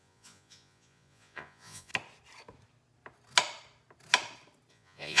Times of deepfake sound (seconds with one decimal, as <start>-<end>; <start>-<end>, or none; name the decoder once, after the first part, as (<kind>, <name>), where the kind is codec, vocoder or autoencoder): 0.0-1.9 (vocoder, Vocos); 4.7-5.2